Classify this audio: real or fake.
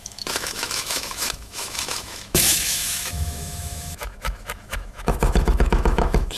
fake